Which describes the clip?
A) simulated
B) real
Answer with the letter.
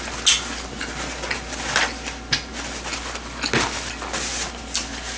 B